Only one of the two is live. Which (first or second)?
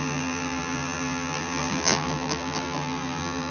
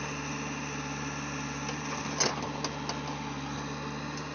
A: second